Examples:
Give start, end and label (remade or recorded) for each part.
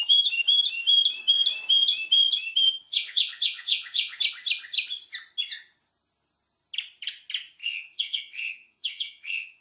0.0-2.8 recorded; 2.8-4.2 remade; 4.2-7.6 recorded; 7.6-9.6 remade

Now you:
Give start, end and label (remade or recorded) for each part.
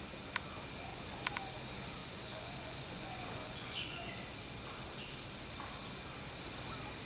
0.0-0.9 recorded; 0.9-1.5 remade; 1.5-2.0 recorded; 2.0-4.1 remade; 4.1-7.1 recorded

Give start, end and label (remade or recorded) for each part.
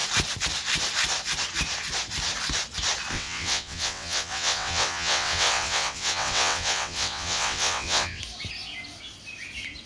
0.0-3.1 recorded; 3.1-8.2 remade; 8.2-9.9 recorded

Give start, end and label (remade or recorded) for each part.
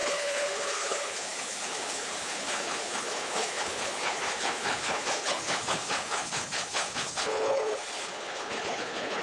0.0-9.2 remade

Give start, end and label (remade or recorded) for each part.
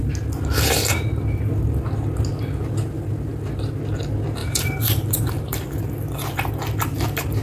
0.0-4.4 recorded; 4.4-5.8 remade; 5.8-7.4 recorded